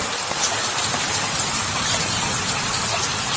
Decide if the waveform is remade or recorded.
recorded